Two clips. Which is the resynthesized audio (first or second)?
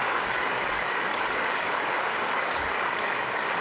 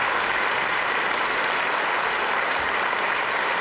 first